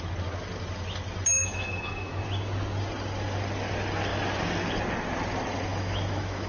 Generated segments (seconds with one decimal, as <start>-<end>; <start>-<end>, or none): 1.3-2.2; 5.7-6.5